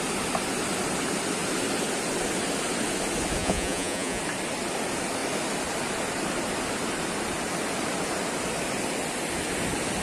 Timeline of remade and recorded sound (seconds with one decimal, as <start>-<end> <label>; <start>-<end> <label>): 0.0-3.4 recorded; 3.4-4.2 remade; 4.2-10.0 recorded